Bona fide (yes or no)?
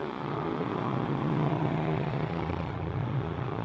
no